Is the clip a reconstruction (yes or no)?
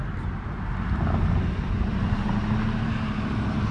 no